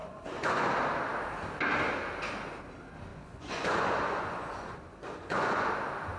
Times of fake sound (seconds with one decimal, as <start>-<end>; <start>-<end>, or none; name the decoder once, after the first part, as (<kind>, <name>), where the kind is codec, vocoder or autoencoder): 0.0-0.7 (vocoder, Vocos); 3.1-5.7